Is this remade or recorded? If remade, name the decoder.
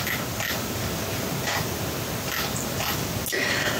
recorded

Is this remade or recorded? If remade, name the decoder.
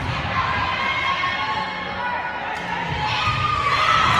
recorded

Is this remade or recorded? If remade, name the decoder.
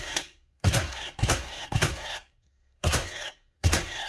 remade, codec, SNAC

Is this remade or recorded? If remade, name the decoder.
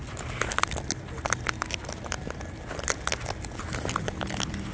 recorded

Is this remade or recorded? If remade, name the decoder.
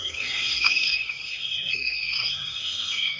remade, codec, SNAC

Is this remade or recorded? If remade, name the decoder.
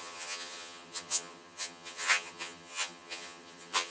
remade, vocoder, HiFi-GAN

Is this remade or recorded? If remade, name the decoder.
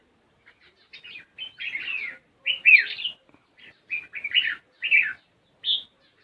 recorded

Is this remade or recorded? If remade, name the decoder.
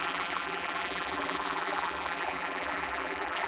remade, vocoder, BigVGAN v2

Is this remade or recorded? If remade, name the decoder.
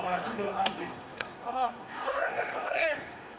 remade, codec, SNAC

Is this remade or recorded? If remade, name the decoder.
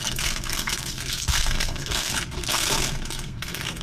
remade, codec, SNAC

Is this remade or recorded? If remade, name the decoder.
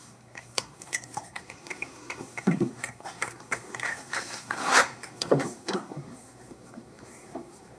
remade, codec, SNAC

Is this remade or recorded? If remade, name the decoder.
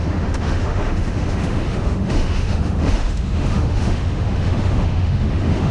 remade, autoencoder, DAC-VAE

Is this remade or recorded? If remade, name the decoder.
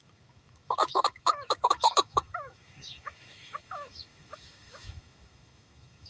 remade, autoencoder, DAC-VAE